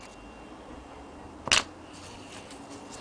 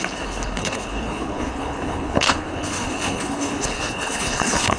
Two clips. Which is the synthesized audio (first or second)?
second